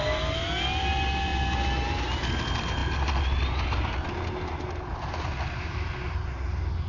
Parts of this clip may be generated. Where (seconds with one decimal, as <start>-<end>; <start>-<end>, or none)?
none